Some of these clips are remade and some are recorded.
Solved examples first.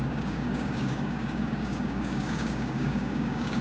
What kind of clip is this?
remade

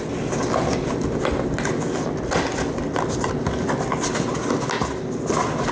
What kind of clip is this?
recorded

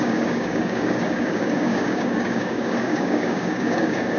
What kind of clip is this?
remade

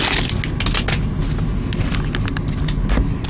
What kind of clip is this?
recorded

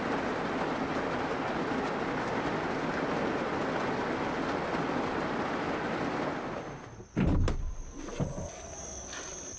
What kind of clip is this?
recorded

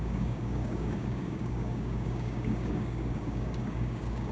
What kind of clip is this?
remade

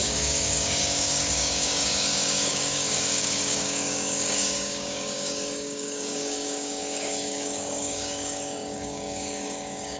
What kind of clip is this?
remade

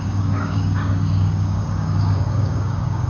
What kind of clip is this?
remade